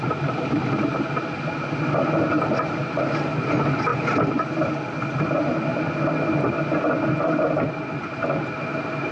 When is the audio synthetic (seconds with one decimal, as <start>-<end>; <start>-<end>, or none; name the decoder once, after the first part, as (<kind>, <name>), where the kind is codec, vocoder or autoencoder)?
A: none